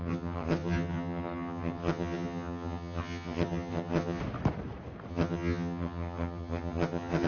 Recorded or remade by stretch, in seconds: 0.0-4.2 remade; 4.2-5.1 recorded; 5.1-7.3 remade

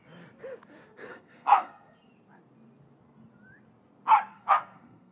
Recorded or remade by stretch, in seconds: 0.0-1.1 recorded; 1.1-2.1 remade; 2.1-4.3 recorded; 4.3-5.1 remade

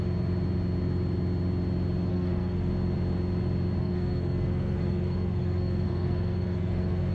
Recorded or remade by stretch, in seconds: 0.0-2.1 recorded; 2.1-2.7 remade; 2.7-3.8 recorded; 3.8-7.1 remade